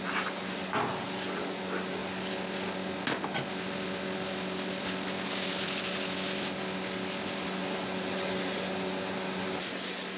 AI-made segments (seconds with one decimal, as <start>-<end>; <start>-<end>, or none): none